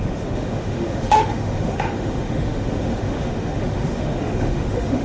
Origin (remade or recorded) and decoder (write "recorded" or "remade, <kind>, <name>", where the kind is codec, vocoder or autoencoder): remade, autoencoder, DAC-VAE